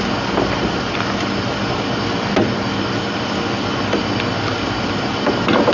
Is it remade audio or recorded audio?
recorded